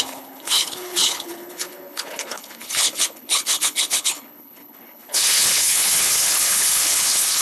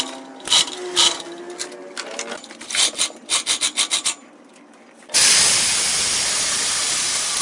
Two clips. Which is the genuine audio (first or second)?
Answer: second